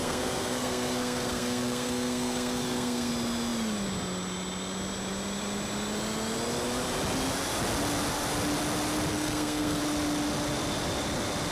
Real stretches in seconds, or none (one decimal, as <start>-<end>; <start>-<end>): 3.1-9.1; 9.8-11.5